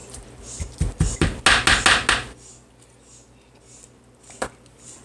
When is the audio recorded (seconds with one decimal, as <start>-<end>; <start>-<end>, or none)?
0.0-5.0